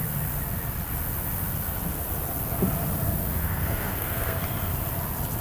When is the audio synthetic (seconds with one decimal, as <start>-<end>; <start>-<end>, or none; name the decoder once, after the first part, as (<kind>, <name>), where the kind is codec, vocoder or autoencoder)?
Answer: 3.4-4.4 (codec, SNAC)